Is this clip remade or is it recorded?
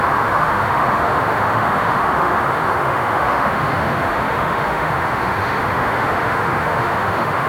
remade